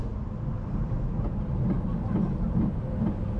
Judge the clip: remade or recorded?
recorded